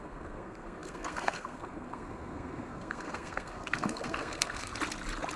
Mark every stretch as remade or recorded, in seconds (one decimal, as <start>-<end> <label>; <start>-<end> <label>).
0.0-4.7 remade; 4.7-5.4 recorded